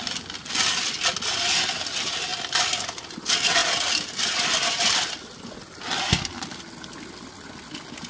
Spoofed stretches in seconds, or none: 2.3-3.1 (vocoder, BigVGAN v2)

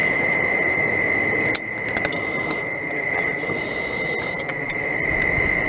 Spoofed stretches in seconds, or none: none

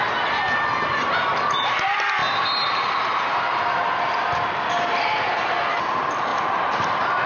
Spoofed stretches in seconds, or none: 6.3-7.3 (vocoder, BigVGAN v2)